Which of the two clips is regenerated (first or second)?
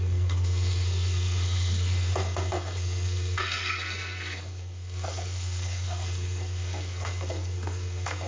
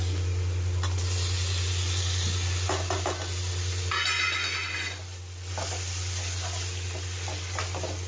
first